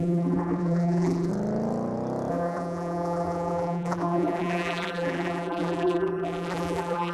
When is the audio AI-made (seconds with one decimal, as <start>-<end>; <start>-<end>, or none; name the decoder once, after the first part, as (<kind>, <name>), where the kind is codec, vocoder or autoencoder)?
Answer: 0.0-1.3 (vocoder, BigVGAN v2); 2.3-7.1

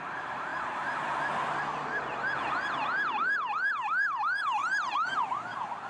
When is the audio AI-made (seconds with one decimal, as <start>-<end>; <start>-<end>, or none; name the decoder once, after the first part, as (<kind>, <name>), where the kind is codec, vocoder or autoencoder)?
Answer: 0.0-0.5 (vocoder, BigVGAN v2); 3.1-5.9

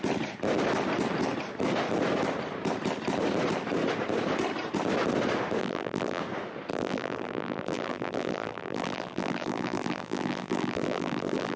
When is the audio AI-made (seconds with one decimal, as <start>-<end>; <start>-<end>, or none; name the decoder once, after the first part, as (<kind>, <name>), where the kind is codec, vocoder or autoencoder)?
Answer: 5.6-6.2 (vocoder, BigVGAN v2); 6.7-11.6

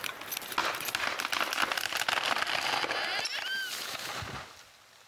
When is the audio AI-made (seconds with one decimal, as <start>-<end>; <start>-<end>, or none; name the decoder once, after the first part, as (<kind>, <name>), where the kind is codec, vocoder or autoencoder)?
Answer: none

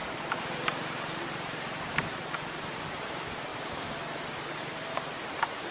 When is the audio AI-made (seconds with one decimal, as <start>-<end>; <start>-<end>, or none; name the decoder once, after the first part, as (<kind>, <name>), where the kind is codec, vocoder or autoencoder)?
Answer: 0.0-2.8 (vocoder, BigVGAN v2); 3.5-5.7

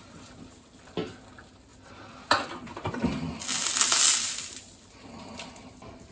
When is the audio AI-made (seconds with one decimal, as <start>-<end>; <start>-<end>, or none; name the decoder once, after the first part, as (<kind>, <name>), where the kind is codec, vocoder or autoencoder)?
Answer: none

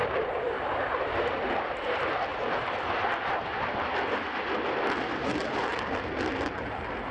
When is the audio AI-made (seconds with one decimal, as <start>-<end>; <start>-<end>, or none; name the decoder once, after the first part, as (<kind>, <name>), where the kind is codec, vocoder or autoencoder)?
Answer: 0.0-0.5 (vocoder, BigVGAN v2); 2.3-2.9

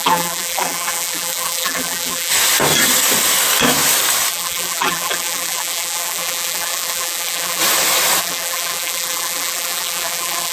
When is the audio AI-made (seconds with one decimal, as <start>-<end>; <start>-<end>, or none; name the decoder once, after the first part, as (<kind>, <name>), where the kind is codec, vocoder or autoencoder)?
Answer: 0.0-2.3 (vocoder, BigVGAN v2); 4.3-7.6; 8.2-10.5